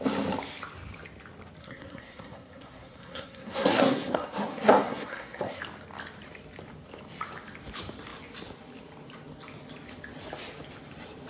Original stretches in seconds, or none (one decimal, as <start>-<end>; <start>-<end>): 0.0-1.6; 5.6-11.3